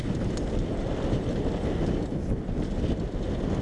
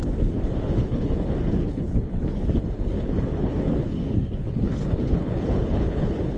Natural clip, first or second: first